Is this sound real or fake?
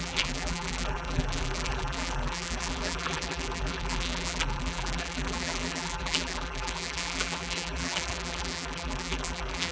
fake